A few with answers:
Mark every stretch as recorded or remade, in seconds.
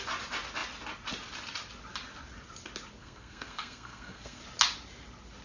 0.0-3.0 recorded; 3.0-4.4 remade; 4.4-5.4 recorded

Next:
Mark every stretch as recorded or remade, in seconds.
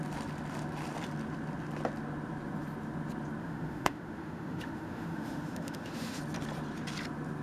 0.0-3.4 recorded; 3.4-6.2 remade; 6.2-7.4 recorded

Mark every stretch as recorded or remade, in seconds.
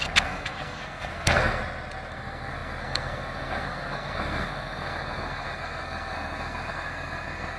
0.0-1.6 remade; 1.6-2.1 recorded; 2.1-7.6 remade